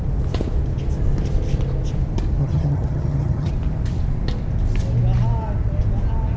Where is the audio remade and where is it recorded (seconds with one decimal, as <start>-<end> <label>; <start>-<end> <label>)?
0.0-2.4 recorded; 2.4-3.5 remade; 3.5-6.4 recorded